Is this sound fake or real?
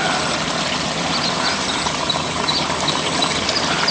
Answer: real